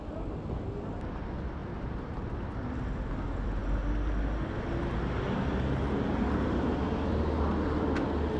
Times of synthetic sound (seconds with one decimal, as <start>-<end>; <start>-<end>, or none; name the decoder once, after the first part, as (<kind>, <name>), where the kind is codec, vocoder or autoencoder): none